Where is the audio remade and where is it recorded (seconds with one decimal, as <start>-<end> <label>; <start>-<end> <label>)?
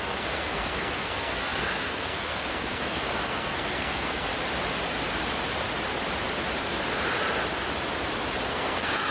0.0-4.3 remade; 4.3-8.5 recorded; 8.5-9.1 remade